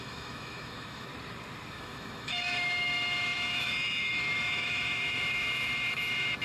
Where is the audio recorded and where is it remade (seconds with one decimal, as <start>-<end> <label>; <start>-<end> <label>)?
0.0-1.1 remade; 1.1-1.7 recorded; 1.7-6.4 remade

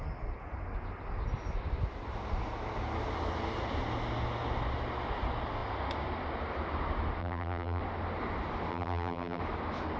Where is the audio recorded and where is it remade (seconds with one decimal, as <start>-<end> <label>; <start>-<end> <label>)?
0.0-7.2 recorded; 7.2-7.8 remade; 7.8-8.7 recorded; 8.7-9.4 remade; 9.4-10.0 recorded

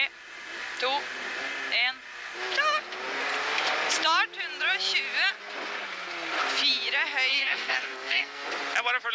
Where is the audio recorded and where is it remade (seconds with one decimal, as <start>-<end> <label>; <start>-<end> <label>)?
0.0-7.3 recorded; 7.3-8.5 remade; 8.5-9.1 recorded

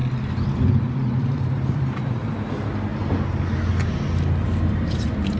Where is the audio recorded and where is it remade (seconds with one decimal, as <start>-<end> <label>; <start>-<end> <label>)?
0.0-0.8 recorded; 0.8-2.9 remade; 2.9-4.7 recorded; 4.7-5.4 remade

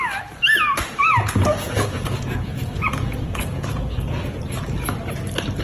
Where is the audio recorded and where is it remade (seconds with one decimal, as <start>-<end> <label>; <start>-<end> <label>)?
0.0-1.0 recorded; 1.0-4.4 remade; 4.4-5.6 recorded

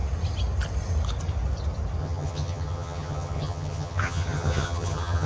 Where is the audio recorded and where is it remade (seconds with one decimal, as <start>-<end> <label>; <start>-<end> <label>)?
0.0-2.0 recorded; 2.0-5.3 remade